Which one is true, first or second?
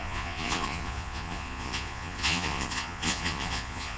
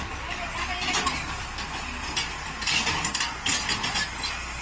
second